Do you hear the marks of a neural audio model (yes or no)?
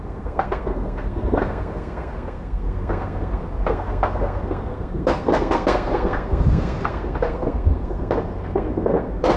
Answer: yes